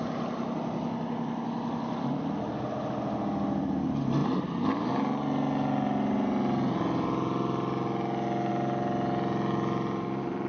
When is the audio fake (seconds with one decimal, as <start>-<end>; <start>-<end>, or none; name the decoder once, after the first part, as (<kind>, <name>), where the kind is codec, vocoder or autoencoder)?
none